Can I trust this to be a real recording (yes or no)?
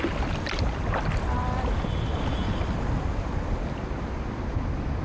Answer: yes